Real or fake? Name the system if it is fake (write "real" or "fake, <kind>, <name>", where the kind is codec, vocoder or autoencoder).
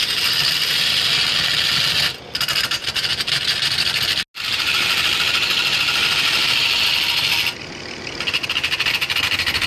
real